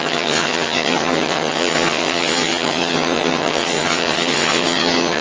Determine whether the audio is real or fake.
fake